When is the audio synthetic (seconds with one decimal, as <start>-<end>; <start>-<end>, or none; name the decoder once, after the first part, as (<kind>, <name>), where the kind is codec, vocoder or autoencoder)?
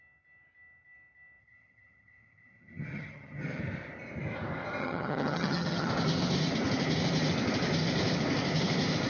1.4-3.6 (vocoder, HiFi-GAN); 4.8-5.9